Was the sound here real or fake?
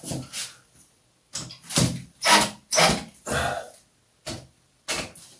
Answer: real